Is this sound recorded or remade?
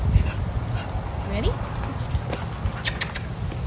recorded